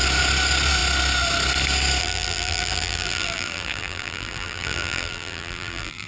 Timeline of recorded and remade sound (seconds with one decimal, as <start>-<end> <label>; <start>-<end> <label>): 0.0-2.0 recorded; 2.0-6.1 remade